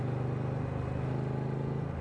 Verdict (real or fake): real